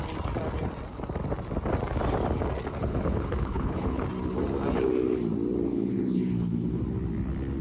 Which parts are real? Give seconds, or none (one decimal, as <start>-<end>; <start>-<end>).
0.0-2.8; 4.0-5.7; 6.8-7.6

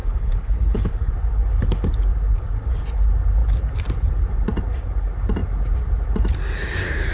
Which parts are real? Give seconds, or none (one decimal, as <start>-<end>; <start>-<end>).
1.1-7.1

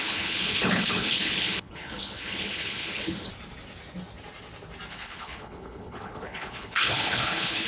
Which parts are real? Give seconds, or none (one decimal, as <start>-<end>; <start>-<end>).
3.3-4.9

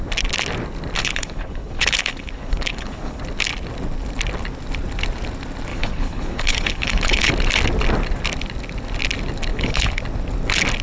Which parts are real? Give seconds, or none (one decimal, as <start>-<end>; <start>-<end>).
0.0-1.0; 3.2-5.7; 7.3-9.5; 10.0-10.8

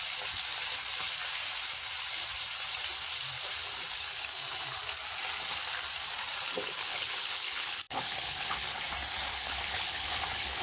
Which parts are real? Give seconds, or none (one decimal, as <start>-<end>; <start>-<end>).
0.0-6.8; 8.8-9.3

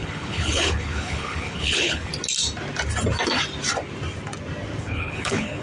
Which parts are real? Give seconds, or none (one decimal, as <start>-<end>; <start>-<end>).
2.1-4.8

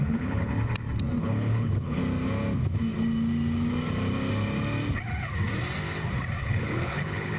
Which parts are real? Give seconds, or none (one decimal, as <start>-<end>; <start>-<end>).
0.5-1.2; 2.0-6.4